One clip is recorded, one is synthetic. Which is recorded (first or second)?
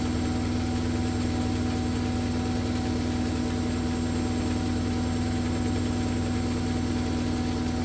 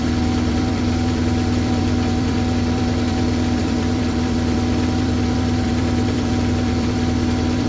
first